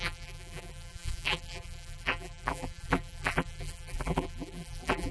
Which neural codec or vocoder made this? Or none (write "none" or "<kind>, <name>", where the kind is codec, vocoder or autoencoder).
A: vocoder, BigVGAN v2